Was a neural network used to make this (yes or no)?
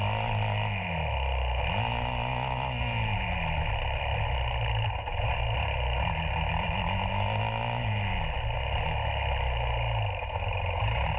no